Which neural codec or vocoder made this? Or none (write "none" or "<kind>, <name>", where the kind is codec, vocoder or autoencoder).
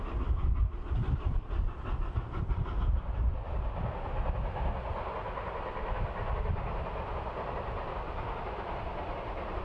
none